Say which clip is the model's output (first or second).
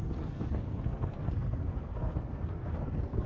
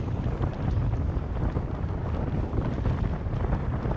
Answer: first